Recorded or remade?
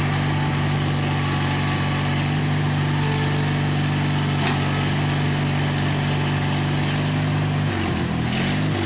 recorded